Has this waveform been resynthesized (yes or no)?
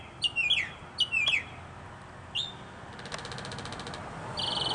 no